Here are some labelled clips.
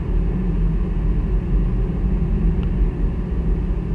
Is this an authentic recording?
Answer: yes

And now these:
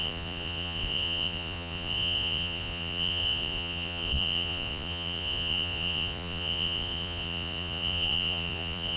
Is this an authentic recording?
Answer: no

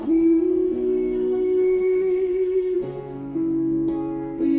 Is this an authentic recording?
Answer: no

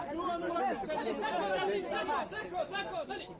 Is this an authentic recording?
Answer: yes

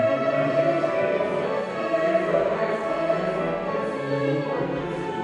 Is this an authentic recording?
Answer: no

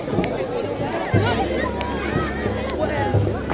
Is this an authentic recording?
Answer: yes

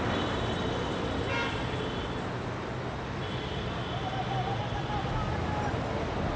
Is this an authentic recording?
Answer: yes